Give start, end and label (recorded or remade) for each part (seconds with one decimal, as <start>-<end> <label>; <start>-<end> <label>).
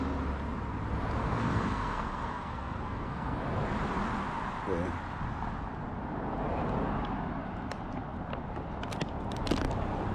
0.0-1.2 recorded; 1.2-3.4 remade; 3.4-10.1 recorded